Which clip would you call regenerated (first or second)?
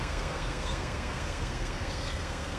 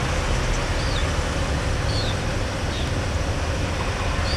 first